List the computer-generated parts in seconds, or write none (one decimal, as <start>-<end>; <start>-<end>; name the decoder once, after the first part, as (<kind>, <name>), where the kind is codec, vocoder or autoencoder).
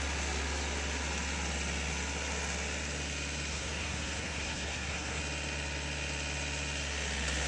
3.5-5.2 (codec, SNAC)